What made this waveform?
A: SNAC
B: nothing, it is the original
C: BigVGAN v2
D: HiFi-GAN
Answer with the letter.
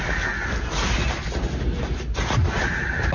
B